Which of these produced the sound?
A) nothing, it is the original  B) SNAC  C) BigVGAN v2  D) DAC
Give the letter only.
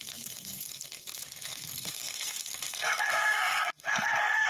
B